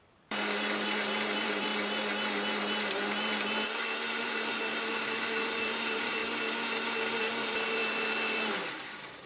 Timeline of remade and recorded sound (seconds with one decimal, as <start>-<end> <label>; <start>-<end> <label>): 0.0-1.7 remade; 1.7-4.2 recorded; 4.2-6.2 remade; 6.2-7.2 recorded; 7.2-7.8 remade; 7.8-8.7 recorded; 8.7-9.3 remade

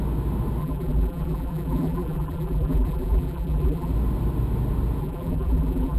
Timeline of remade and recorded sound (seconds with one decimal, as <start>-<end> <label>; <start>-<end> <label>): 0.0-0.6 recorded; 0.6-3.9 remade; 3.9-5.0 recorded; 5.0-6.0 remade

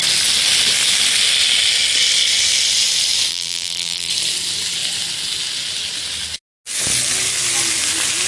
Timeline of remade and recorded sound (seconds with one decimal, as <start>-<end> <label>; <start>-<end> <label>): 0.0-3.3 recorded; 3.3-4.1 remade; 4.1-8.3 recorded

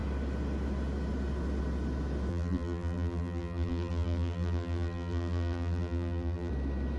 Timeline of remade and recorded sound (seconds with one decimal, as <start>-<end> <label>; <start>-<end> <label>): 0.0-2.3 recorded; 2.3-6.5 remade; 6.5-7.0 recorded

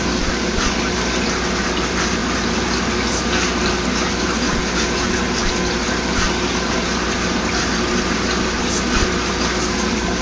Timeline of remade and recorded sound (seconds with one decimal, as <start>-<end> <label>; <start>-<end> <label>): 0.0-10.2 remade